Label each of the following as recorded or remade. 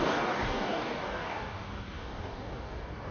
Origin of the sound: remade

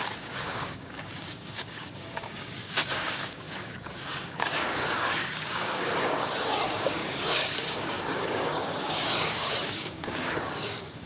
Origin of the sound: remade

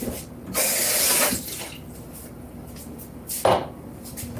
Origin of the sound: recorded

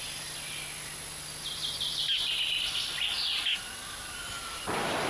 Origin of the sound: recorded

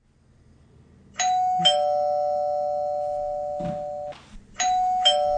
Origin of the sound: recorded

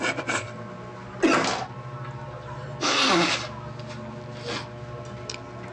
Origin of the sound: recorded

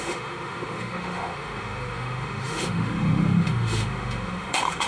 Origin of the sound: remade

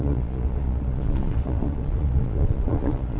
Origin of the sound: remade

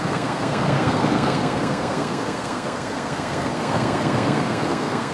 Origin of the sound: remade